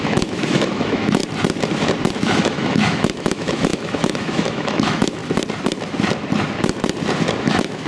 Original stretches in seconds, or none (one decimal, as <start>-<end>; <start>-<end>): 1.2-2.1; 5.2-7.4